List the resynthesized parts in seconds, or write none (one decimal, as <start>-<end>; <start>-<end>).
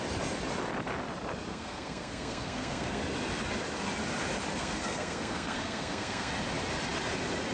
1.5-3.0; 4.5-6.3